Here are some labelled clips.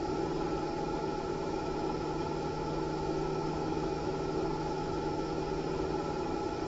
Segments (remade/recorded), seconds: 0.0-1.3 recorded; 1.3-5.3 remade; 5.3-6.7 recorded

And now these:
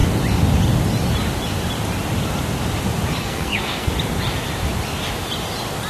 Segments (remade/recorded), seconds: 0.0-3.2 recorded; 3.2-3.9 remade; 3.9-5.9 recorded

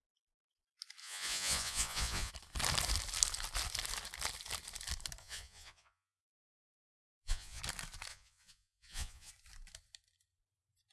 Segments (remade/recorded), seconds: 0.0-1.0 recorded; 1.0-2.3 remade; 2.3-5.2 recorded; 5.2-7.6 remade; 7.6-8.1 recorded; 8.1-9.3 remade; 9.3-10.9 recorded

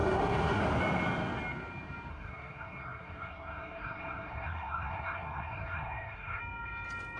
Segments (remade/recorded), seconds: 0.0-0.6 remade; 0.6-2.1 recorded; 2.1-6.4 remade; 6.4-7.2 recorded